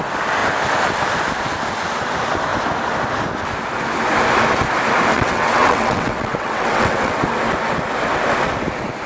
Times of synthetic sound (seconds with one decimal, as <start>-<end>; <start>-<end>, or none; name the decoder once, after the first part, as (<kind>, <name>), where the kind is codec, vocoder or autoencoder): 5.1-7.2 (vocoder, WaveNeXt)